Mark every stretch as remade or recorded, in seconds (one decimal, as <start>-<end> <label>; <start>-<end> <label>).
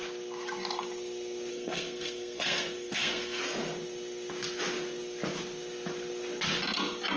0.0-1.5 recorded; 1.5-3.4 remade; 3.4-7.2 recorded